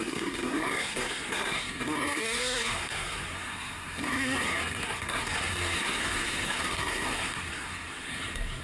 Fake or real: fake